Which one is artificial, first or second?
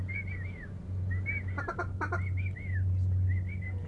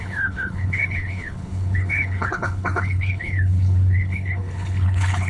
second